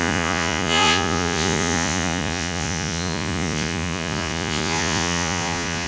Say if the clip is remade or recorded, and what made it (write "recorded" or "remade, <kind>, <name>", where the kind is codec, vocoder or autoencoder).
remade, vocoder, Vocos